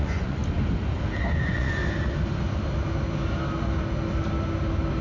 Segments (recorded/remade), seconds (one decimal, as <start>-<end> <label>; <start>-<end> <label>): 0.0-0.4 remade; 0.4-1.3 recorded; 1.3-1.8 remade; 1.8-5.0 recorded